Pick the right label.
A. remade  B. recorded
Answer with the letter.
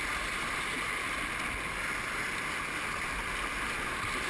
B